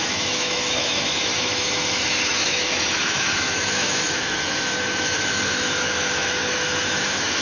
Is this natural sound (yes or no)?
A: no